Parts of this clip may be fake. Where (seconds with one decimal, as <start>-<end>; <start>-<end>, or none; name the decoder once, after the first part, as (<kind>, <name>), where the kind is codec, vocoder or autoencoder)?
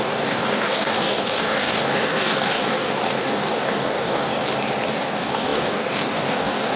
0.0-4.3 (codec, DAC); 4.9-6.8